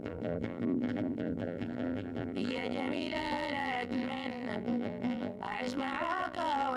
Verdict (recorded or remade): remade